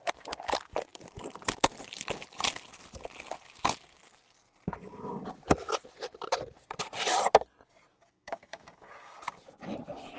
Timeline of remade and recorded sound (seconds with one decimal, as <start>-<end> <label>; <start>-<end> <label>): 0.0-7.9 recorded; 7.9-9.2 remade; 9.2-10.2 recorded